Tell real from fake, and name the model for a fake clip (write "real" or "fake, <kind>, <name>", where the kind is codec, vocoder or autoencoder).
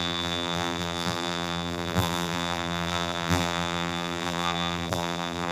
fake, vocoder, BigVGAN v2